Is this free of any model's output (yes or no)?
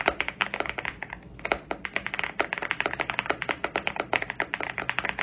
yes